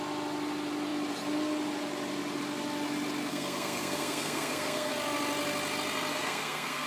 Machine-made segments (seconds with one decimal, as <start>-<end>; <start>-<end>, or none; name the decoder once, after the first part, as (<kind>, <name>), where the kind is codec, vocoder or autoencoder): 3.3-4.9 (codec, SNAC); 6.1-6.9